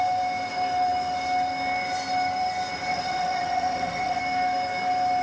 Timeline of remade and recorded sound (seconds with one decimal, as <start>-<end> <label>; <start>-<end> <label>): 0.0-2.9 recorded; 2.9-4.2 remade; 4.2-5.2 recorded